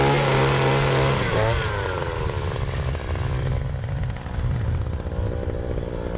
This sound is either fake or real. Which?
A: real